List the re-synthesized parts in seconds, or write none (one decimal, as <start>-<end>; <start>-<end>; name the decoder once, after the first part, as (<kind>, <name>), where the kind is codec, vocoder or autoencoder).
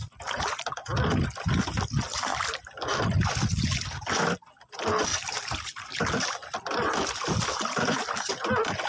2.3-4.3 (vocoder, BigVGAN v2); 5.1-8.3